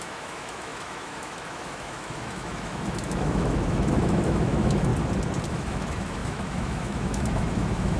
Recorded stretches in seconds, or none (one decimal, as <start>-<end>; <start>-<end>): 4.9-5.5